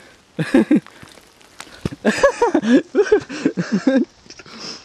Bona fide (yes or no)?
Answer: yes